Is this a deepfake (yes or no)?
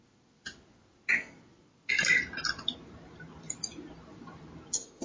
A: no